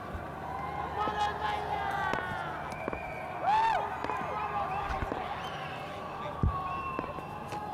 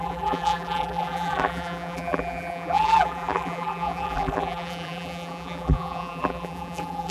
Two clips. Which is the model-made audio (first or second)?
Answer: second